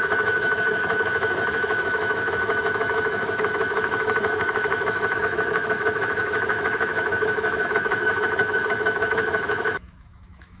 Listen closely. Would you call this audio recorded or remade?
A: remade